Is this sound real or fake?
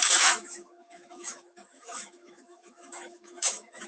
fake